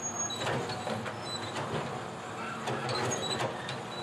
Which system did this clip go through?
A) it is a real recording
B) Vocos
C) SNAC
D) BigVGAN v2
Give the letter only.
A